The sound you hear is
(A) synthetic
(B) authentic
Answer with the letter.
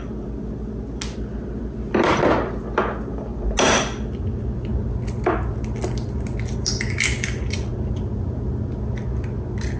B